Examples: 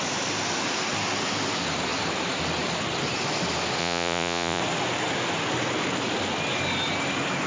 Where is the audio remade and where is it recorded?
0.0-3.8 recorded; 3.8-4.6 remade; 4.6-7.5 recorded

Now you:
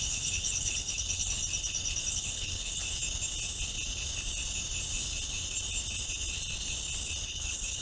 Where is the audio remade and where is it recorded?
0.0-1.4 remade; 1.4-2.1 recorded; 2.1-3.0 remade; 3.0-7.3 recorded; 7.3-7.8 remade